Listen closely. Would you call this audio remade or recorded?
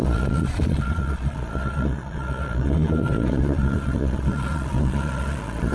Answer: remade